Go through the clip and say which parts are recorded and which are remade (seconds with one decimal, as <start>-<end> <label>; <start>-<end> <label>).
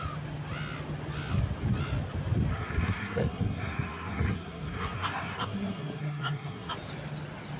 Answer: 0.0-2.5 recorded; 2.5-6.7 remade; 6.7-7.6 recorded